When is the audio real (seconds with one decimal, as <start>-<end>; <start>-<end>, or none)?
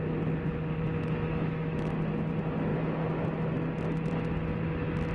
0.0-0.9; 1.9-5.1